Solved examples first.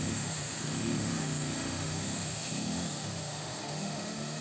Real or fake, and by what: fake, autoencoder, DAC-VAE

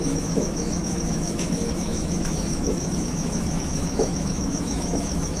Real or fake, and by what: fake, autoencoder, DAC-VAE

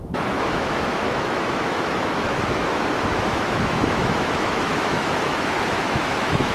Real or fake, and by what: fake, autoencoder, DAC-VAE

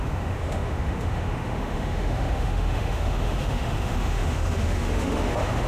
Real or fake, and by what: fake, autoencoder, DAC-VAE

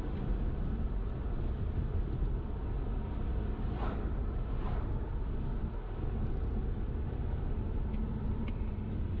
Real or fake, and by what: real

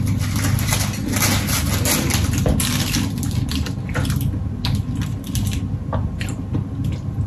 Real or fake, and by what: real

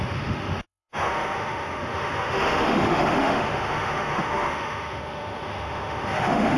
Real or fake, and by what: fake, autoencoder, DAC-VAE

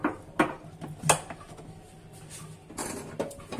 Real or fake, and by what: real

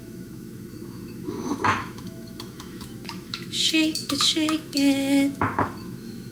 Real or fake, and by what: fake, autoencoder, DAC-VAE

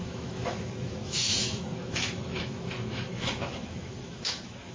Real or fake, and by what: fake, autoencoder, DAC-VAE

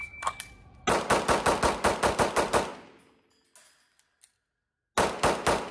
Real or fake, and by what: real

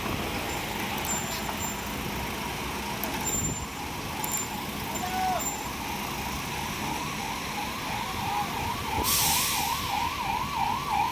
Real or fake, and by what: real